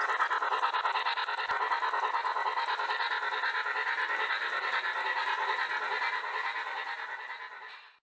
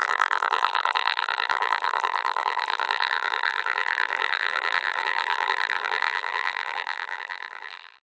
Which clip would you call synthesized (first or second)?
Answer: second